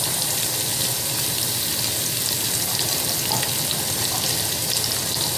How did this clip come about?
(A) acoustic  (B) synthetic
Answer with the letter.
A